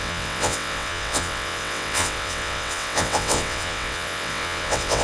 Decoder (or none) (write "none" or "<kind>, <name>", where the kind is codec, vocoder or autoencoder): vocoder, WaveNeXt